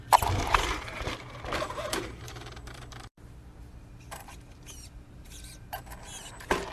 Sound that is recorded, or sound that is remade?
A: remade